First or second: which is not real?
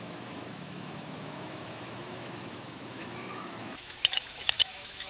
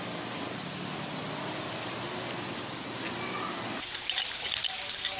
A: first